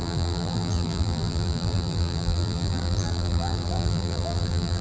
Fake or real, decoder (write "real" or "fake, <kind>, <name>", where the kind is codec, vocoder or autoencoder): fake, vocoder, BigVGAN v2